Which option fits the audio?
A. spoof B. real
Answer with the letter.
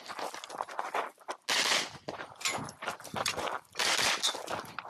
B